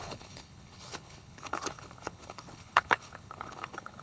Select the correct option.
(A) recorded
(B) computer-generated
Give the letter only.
B